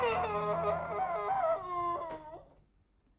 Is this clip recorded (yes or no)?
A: yes